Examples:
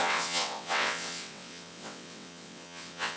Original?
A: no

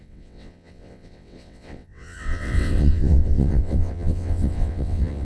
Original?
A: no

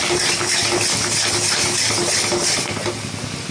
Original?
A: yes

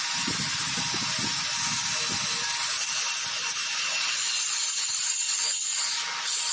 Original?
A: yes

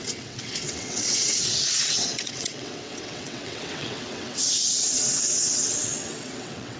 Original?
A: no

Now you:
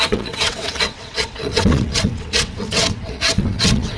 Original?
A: no